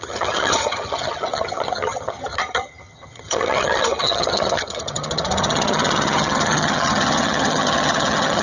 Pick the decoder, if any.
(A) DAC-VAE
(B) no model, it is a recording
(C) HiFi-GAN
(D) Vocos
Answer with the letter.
C